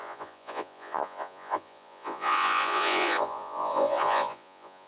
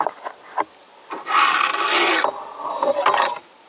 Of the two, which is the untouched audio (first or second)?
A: second